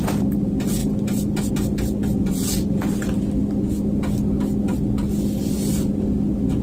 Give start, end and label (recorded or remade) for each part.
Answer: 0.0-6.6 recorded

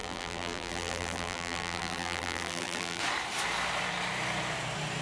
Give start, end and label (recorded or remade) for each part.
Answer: 0.0-3.0 remade; 3.0-5.0 recorded

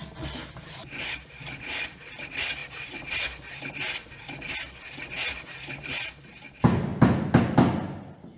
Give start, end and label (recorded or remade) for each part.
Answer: 0.0-2.6 recorded; 2.6-3.7 remade; 3.7-8.4 recorded

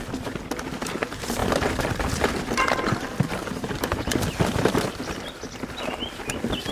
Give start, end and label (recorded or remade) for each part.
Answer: 0.0-6.7 recorded